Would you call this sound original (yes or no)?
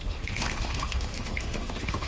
no